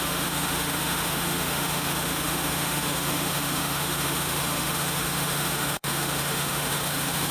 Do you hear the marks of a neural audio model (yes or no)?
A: yes